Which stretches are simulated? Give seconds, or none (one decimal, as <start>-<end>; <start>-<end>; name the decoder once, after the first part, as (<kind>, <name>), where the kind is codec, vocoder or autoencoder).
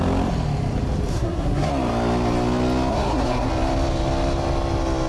1.1-1.7 (codec, SNAC); 2.9-3.5